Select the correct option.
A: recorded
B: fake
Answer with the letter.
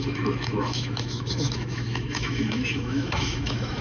B